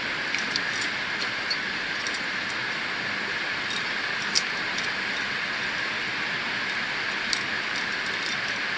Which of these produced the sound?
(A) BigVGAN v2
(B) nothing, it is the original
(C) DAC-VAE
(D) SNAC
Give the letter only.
B